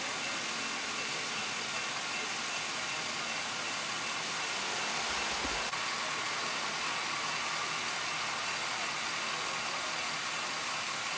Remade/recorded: recorded